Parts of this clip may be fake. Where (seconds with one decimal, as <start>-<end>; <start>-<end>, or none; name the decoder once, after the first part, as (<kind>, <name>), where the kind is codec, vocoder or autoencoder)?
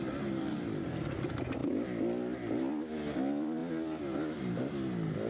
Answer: none